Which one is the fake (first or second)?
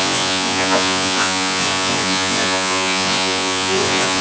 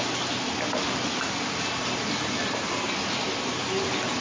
first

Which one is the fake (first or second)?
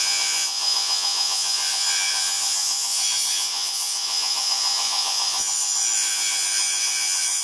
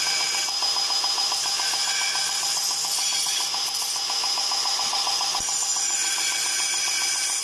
first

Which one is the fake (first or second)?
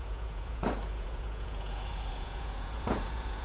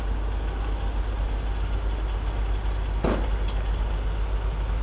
first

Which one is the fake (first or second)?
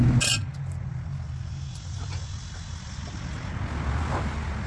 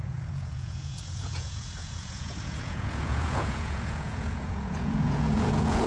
second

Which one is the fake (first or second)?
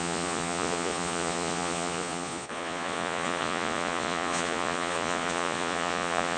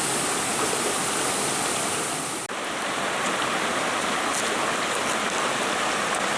first